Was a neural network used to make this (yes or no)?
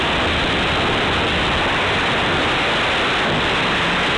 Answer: no